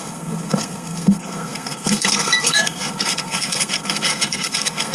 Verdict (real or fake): fake